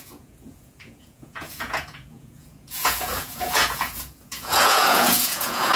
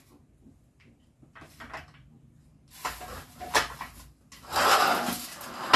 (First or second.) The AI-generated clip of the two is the first